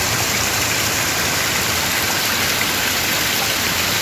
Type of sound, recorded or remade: recorded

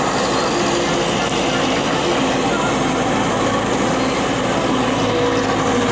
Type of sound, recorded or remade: recorded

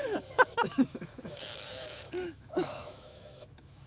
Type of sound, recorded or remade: remade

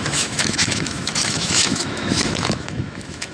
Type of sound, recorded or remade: remade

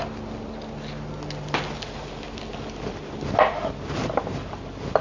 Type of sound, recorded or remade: recorded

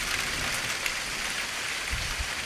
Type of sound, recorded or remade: recorded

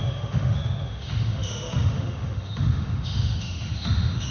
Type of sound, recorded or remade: remade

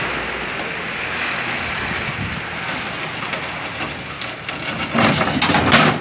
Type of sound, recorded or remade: recorded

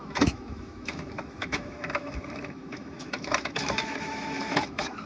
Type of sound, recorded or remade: remade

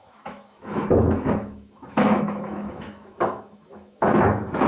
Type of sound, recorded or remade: remade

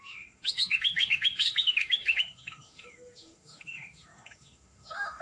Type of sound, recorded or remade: remade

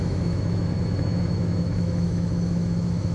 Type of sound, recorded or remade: remade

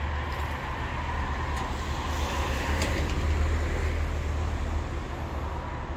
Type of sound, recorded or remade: recorded